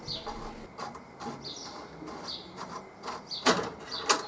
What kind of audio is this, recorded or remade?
recorded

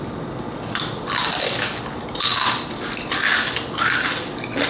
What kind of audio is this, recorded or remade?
remade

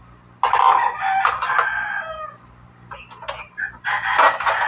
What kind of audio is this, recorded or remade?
recorded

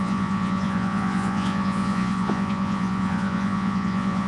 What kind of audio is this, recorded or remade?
remade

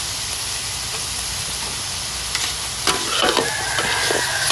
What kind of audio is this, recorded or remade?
recorded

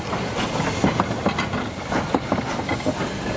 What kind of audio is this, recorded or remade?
recorded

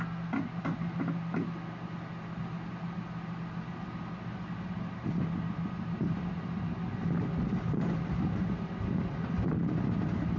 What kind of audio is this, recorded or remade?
recorded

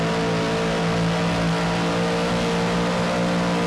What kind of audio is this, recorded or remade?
recorded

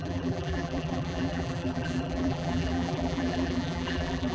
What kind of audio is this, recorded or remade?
remade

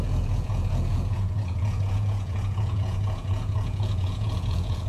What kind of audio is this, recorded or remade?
remade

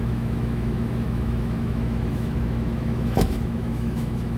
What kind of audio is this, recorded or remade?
remade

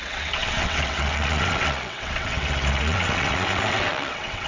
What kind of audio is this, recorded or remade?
remade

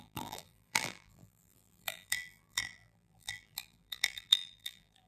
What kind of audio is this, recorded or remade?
remade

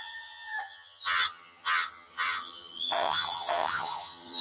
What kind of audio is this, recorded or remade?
remade